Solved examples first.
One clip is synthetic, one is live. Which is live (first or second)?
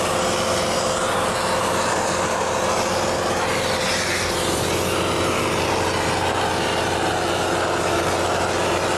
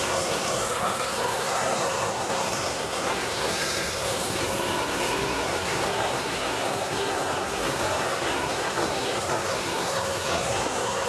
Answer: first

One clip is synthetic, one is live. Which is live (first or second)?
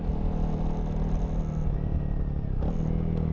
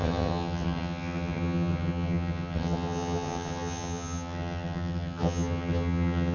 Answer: first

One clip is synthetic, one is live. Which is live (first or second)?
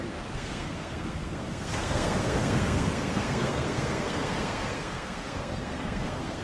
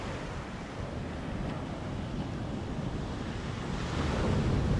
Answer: second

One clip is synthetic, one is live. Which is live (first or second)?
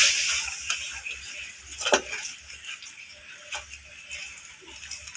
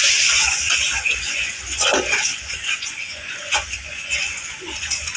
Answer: first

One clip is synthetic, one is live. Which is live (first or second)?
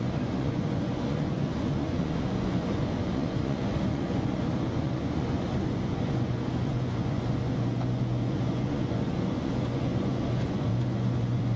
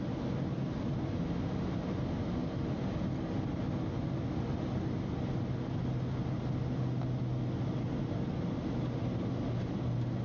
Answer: second